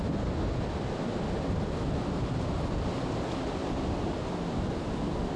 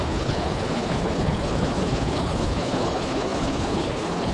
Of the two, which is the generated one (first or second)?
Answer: second